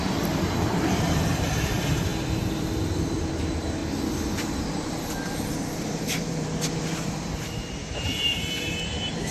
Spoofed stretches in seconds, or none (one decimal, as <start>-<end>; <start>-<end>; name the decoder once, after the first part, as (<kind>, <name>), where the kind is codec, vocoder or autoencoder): 0.0-2.1 (vocoder, BigVGAN v2); 3.1-3.8; 4.6-9.3